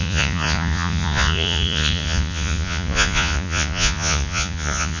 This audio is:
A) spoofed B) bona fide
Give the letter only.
A